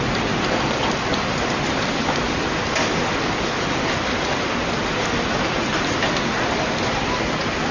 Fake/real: real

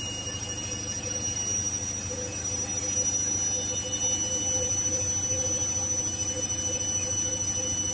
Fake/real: real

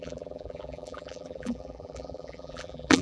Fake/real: fake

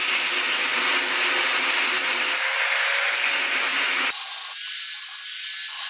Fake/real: real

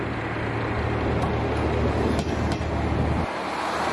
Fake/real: real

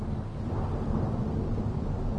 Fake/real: real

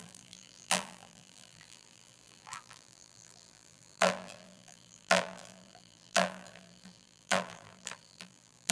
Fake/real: fake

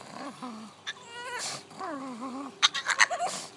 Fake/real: fake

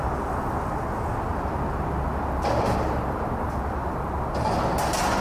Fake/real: real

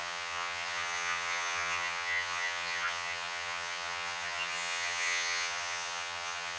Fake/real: fake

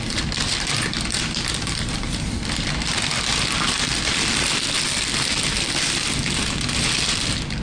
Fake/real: fake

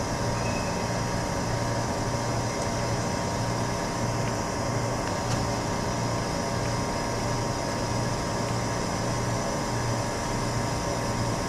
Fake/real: real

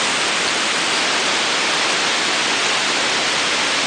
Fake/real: real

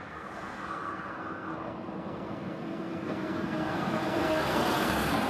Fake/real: fake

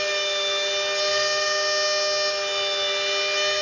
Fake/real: real